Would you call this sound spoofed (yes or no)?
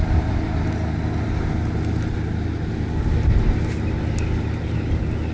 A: no